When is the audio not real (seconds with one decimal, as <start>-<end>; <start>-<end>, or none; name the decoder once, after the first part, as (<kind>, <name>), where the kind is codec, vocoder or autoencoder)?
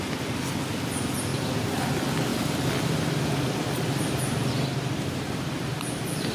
1.3-1.9 (vocoder, BigVGAN v2); 2.3-6.3